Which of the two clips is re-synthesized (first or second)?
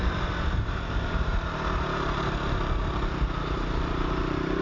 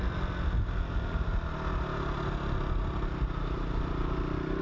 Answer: first